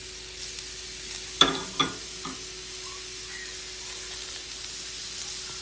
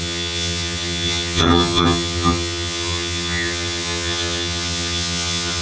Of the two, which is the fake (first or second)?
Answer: second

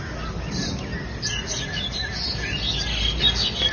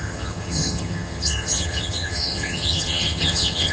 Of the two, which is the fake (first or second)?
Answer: second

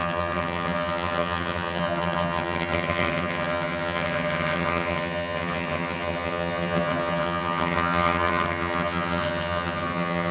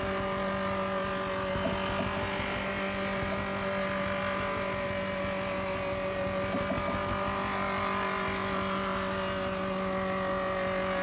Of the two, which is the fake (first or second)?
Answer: first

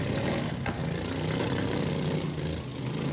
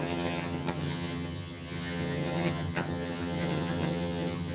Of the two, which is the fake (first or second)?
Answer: second